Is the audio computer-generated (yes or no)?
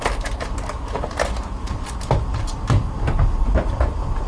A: no